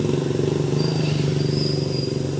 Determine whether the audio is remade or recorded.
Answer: recorded